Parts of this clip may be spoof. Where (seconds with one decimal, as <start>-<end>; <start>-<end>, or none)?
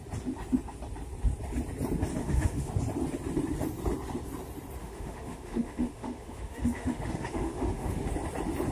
2.2-2.7; 4.8-8.1